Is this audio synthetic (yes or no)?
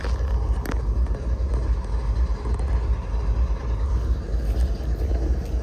no